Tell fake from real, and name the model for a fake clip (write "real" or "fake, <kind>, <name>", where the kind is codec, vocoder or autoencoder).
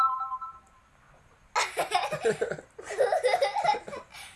real